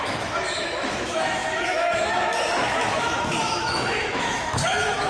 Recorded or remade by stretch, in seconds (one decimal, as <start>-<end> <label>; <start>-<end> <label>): 0.0-5.1 remade